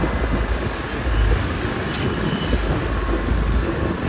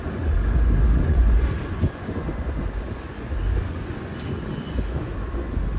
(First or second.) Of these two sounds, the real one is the first